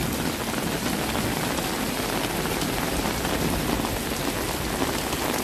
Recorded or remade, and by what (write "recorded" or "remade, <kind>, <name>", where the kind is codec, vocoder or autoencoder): recorded